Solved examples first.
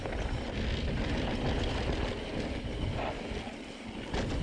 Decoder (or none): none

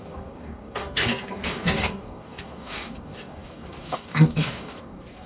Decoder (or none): codec, DAC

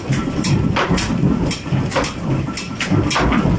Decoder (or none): none